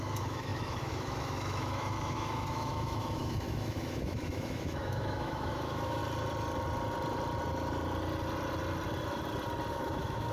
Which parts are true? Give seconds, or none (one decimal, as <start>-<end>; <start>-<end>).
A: 6.0-9.7